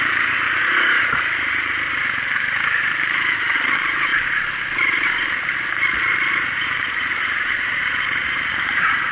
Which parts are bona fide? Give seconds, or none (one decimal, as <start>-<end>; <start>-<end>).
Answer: 4.1-6.3